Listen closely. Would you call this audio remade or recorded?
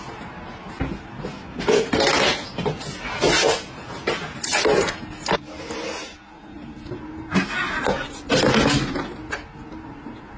recorded